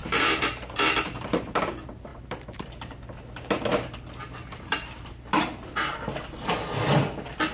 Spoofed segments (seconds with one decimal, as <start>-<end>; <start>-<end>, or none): 0.0-1.6; 2.1-2.6